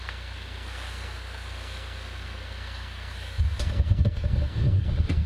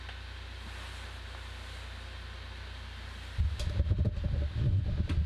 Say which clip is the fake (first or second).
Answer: first